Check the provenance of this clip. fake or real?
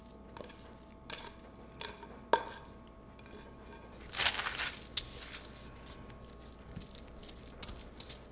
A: real